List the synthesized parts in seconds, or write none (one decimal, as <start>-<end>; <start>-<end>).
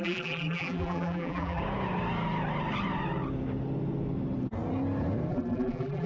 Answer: 0.0-1.6; 5.3-6.1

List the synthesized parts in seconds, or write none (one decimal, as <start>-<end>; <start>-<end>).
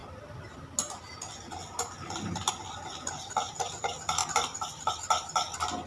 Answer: 4.2-4.9